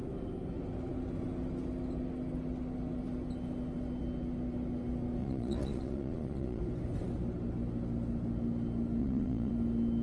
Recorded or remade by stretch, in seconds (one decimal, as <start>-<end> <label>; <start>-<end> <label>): 0.0-5.2 recorded; 5.2-6.6 remade; 6.6-9.0 recorded; 9.0-9.5 remade; 9.5-10.0 recorded